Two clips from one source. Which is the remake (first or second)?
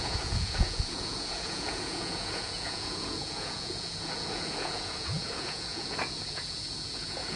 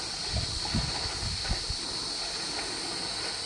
first